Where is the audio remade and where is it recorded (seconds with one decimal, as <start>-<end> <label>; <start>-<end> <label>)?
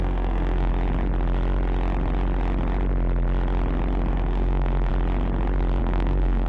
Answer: 0.0-0.7 remade; 0.7-4.1 recorded; 4.1-4.9 remade; 4.9-5.8 recorded; 5.8-6.5 remade